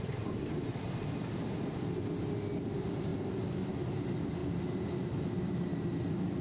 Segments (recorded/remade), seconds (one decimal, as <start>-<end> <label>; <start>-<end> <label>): 0.0-6.4 recorded